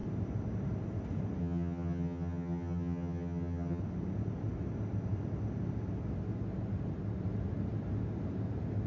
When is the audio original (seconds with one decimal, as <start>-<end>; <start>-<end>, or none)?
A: 0.0-1.4; 3.8-8.9